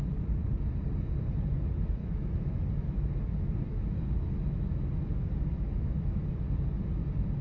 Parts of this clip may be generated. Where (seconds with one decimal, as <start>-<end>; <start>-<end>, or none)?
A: 2.0-6.3